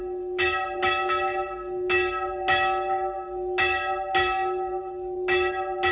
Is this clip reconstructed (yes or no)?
no